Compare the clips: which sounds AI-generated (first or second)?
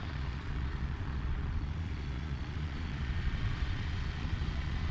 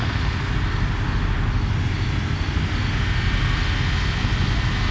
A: first